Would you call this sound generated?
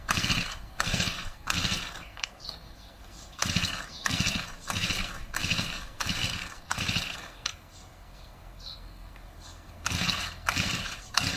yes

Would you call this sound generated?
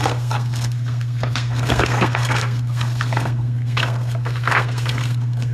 yes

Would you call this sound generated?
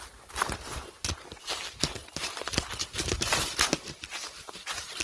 no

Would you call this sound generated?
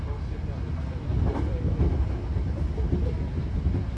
no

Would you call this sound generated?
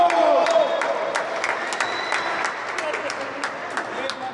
no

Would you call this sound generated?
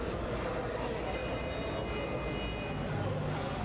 no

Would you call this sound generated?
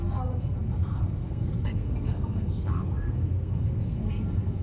yes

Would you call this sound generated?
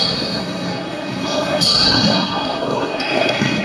yes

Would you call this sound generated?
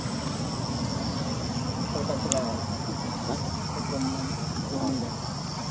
no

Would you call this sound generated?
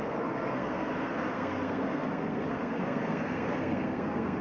yes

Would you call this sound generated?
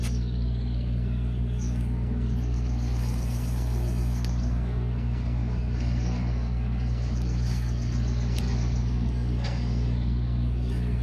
yes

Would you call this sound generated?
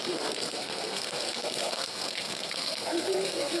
yes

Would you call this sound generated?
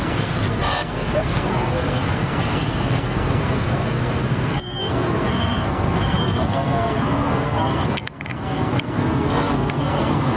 yes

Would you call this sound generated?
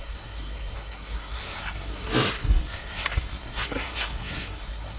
yes